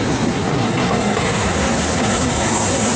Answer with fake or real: fake